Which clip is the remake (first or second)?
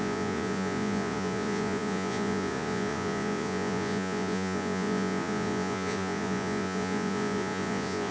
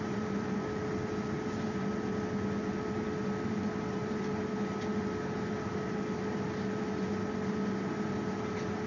first